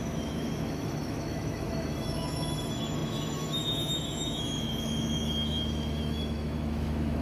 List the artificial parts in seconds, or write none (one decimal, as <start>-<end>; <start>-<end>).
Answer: 0.0-7.2